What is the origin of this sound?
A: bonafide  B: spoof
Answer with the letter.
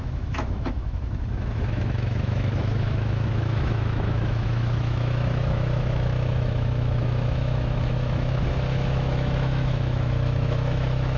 B